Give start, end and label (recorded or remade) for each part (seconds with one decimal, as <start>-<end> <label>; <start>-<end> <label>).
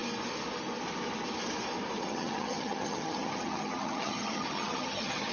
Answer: 0.0-2.0 recorded; 2.0-5.3 remade